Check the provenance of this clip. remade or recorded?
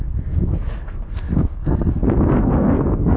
remade